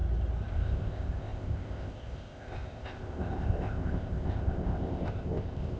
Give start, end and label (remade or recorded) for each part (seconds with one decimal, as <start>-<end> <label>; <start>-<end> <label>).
0.0-0.5 recorded; 0.5-5.8 remade